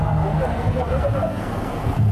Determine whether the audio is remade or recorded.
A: remade